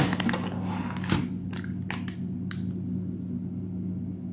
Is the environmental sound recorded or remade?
recorded